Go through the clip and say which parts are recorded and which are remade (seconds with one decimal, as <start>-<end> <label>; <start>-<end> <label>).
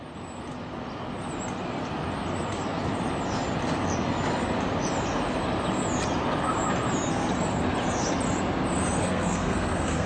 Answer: 0.0-9.0 recorded; 9.0-10.1 remade